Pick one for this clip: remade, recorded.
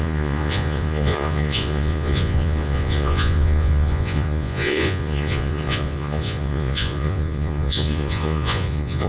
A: remade